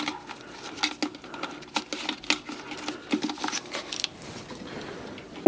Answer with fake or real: real